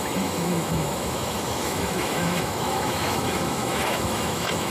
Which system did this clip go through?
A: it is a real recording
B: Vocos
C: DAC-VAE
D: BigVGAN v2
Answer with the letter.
C